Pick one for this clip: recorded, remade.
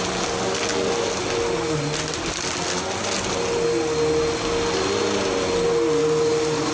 recorded